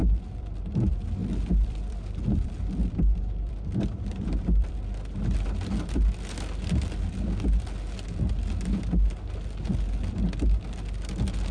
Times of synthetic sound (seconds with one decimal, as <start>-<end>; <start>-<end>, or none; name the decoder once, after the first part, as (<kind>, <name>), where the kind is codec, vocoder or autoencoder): 0.0-0.6 (vocoder, BigVGAN v2); 1.2-4.7